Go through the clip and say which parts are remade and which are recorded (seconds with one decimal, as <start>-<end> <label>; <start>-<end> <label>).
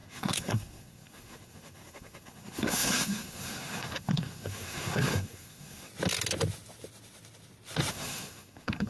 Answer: 0.0-5.9 remade; 5.9-7.9 recorded; 7.9-8.9 remade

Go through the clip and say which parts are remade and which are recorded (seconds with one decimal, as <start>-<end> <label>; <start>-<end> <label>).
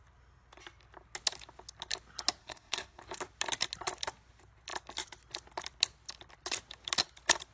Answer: 0.0-2.4 recorded; 2.4-3.0 remade; 3.0-7.5 recorded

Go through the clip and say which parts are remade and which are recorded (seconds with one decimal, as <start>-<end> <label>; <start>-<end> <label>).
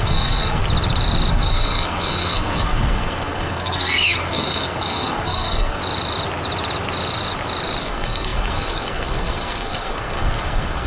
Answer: 0.0-0.6 remade; 0.6-1.3 recorded; 1.3-5.8 remade; 5.8-7.8 recorded; 7.8-10.9 remade